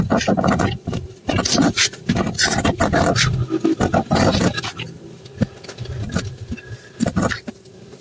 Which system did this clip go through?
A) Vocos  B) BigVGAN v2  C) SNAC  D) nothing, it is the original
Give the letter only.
D